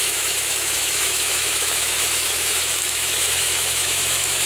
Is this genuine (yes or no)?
no